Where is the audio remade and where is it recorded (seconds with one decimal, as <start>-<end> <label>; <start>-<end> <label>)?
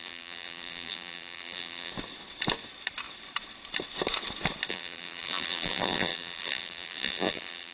0.0-1.9 remade; 1.9-4.7 recorded; 4.7-7.7 remade